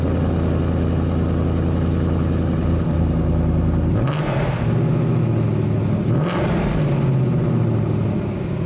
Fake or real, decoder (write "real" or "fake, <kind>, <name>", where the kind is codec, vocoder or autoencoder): real